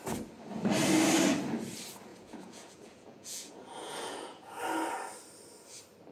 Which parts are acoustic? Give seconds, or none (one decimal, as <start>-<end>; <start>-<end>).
0.0-2.1; 4.6-6.1